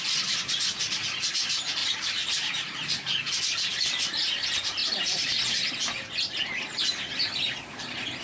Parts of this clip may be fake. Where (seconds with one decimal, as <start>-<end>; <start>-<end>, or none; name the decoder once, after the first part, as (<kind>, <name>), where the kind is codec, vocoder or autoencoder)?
1.8-3.3 (vocoder, BigVGAN v2); 4.8-5.4